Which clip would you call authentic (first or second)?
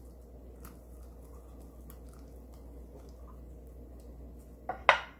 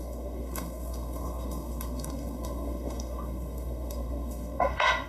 first